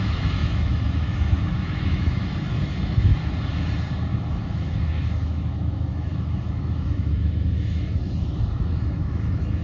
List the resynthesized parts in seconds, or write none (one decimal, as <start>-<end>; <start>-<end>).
0.0-3.1; 4.3-9.6